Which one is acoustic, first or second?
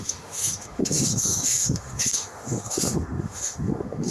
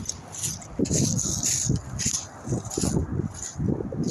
second